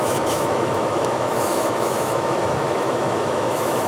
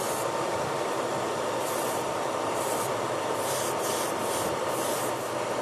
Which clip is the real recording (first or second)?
second